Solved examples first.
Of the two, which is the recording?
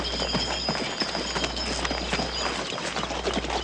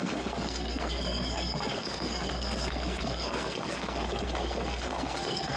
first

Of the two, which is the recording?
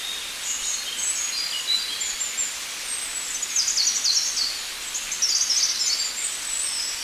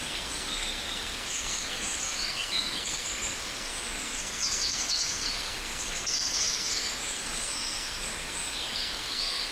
first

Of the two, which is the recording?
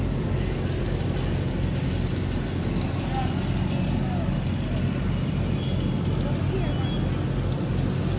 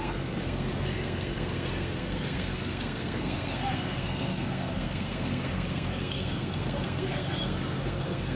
first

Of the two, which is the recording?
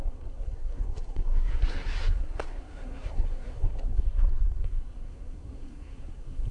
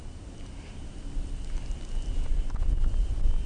second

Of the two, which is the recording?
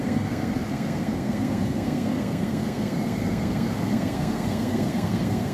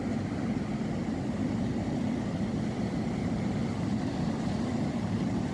second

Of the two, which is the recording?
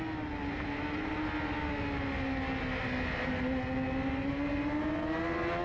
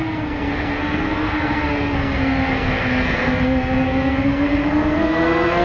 first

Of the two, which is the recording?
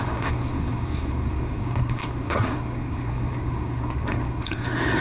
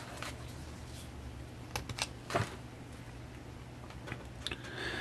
second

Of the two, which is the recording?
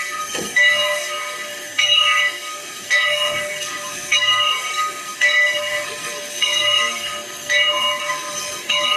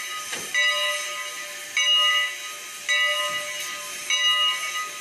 second